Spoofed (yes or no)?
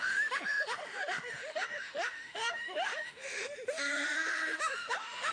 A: yes